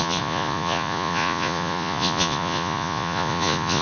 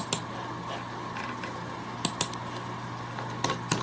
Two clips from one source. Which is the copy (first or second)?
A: first